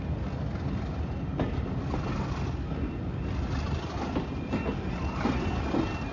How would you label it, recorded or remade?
recorded